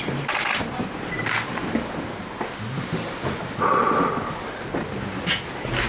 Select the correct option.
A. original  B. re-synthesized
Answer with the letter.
A